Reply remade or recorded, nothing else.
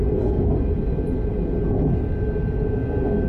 recorded